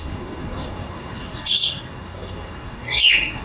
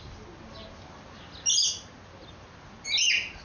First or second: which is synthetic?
first